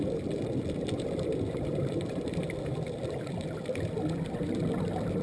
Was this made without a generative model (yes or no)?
no